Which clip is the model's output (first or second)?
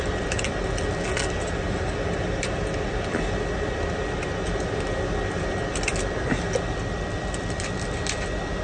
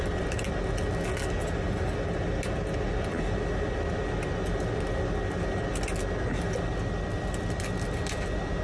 first